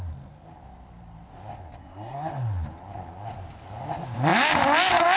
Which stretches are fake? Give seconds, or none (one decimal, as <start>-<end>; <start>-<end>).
1.8-2.3

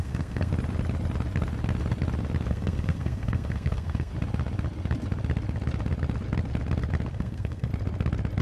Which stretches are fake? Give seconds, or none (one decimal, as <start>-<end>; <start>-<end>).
0.0-0.5; 2.5-4.1; 7.1-7.7

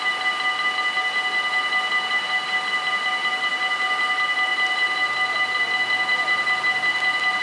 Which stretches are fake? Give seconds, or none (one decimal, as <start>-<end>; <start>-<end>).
none